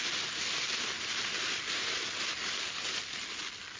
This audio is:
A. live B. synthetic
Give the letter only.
A